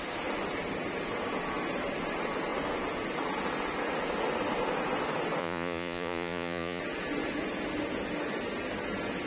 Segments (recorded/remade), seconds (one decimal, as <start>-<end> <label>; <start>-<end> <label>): 0.0-5.4 recorded; 5.4-6.8 remade; 6.8-9.3 recorded